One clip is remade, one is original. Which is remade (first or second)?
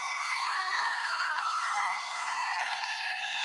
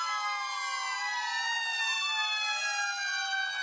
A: first